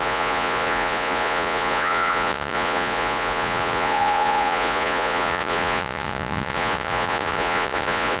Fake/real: fake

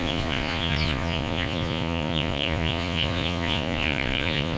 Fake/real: fake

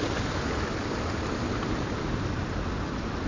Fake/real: real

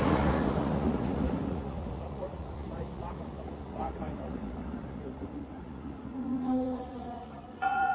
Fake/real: fake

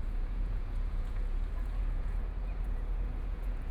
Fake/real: fake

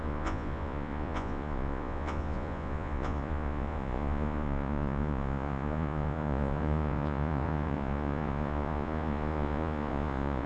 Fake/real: fake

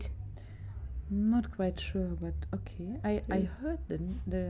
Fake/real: real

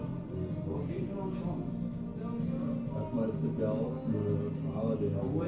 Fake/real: real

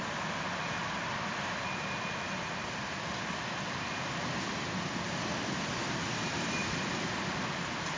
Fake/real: real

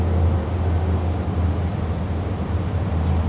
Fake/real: real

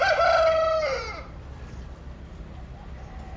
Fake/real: real